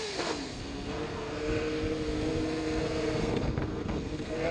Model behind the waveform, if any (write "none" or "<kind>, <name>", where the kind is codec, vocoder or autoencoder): codec, SNAC